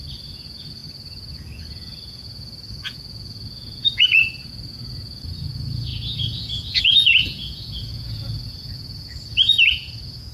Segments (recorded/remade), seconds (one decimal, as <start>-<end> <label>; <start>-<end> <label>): 0.0-10.3 remade